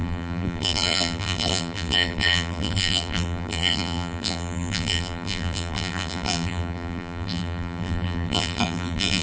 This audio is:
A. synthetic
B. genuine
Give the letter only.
A